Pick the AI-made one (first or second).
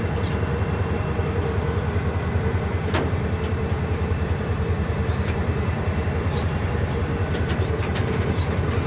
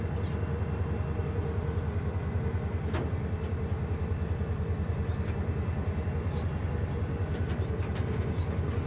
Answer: first